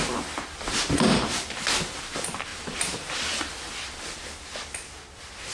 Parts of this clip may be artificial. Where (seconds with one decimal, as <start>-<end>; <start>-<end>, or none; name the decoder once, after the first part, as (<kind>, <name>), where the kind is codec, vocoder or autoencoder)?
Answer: 0.0-5.5 (vocoder, BigVGAN v2)